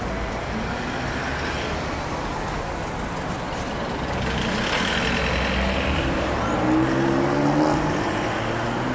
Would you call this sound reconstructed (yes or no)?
no